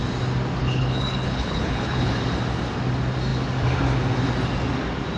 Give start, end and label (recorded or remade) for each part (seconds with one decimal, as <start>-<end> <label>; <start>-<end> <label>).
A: 0.0-0.6 recorded; 0.6-2.1 remade; 2.1-5.2 recorded